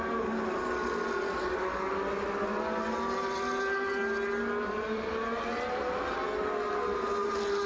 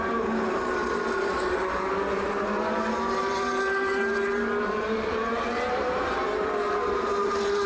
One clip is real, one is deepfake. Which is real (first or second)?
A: first